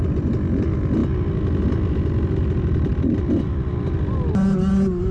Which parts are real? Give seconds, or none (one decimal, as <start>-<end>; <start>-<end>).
0.0-5.1